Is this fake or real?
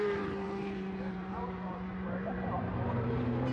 fake